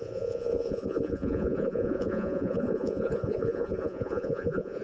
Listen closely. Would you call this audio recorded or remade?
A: remade